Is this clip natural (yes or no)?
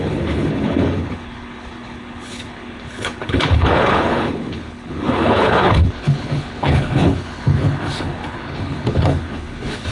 no